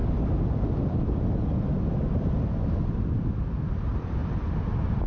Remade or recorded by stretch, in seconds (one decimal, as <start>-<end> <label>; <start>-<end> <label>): 0.0-5.1 recorded